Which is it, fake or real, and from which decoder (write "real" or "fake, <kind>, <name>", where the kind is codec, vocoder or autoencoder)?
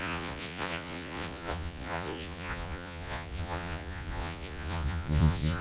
fake, vocoder, Vocos